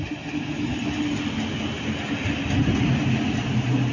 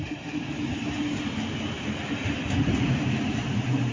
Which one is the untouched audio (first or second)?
first